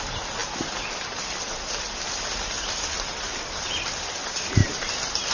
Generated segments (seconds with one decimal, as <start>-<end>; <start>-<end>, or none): none